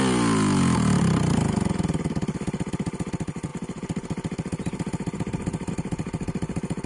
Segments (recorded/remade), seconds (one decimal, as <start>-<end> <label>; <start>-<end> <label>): 0.0-6.9 recorded